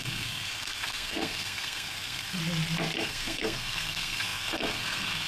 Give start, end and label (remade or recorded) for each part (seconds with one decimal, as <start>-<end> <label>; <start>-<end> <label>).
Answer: 0.0-2.4 remade; 2.4-3.0 recorded; 3.0-5.3 remade